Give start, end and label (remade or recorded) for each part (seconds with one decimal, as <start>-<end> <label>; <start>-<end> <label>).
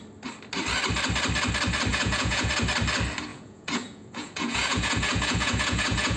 0.0-1.9 recorded; 1.9-2.5 remade; 2.5-3.3 recorded; 3.3-6.2 remade